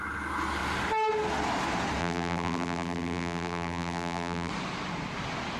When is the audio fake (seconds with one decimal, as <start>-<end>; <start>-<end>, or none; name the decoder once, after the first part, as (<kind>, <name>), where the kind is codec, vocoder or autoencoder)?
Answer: 2.0-4.5 (vocoder, BigVGAN v2)